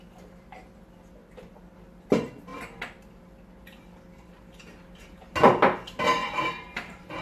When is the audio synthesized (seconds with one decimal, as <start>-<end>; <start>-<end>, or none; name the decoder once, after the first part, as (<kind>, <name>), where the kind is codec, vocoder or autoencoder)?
6.2-7.2 (vocoder, BigVGAN v2)